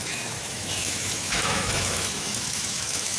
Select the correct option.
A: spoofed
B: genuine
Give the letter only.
A